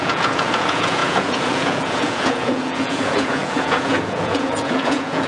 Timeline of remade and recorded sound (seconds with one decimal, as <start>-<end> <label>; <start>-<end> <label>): 0.0-5.3 remade